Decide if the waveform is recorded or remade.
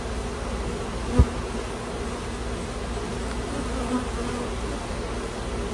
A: recorded